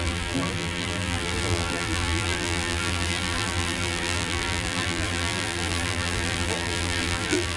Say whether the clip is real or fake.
fake